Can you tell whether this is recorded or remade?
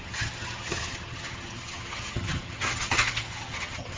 remade